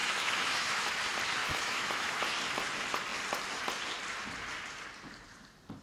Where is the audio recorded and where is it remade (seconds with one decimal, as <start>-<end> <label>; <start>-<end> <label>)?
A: 0.0-1.0 remade; 1.0-1.4 recorded; 1.4-2.2 remade; 2.2-5.8 recorded